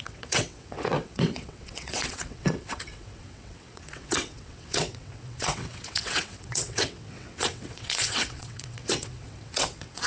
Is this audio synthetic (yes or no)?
yes